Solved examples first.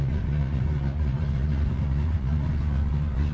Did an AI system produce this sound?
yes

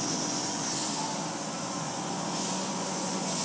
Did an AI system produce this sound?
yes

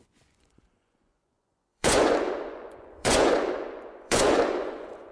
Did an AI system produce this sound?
yes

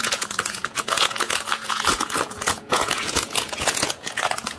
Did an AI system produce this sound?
yes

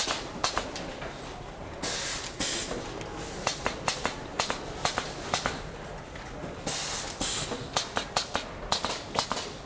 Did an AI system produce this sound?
no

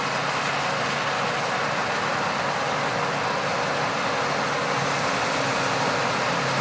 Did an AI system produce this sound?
no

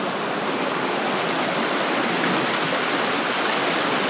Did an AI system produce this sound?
no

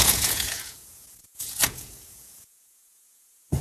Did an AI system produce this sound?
yes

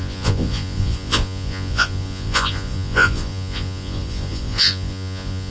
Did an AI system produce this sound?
yes